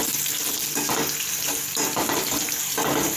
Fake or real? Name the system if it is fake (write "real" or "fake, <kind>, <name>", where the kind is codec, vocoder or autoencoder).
real